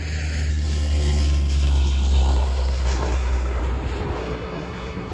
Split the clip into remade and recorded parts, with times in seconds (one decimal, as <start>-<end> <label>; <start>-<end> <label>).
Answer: 0.0-0.5 recorded; 0.5-3.6 remade; 3.6-4.2 recorded; 4.2-5.1 remade